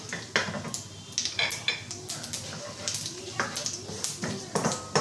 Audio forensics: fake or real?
real